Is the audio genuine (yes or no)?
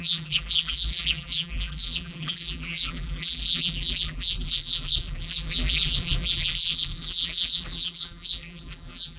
no